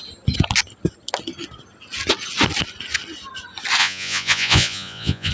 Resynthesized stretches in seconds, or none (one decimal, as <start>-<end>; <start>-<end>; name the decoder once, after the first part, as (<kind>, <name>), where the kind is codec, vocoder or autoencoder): 3.8-5.3 (vocoder, Vocos)